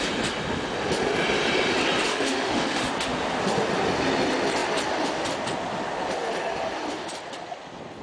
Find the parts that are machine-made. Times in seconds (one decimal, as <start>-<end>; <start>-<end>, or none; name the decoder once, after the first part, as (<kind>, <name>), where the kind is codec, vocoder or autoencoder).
2.1-2.9 (autoencoder, DAC-VAE)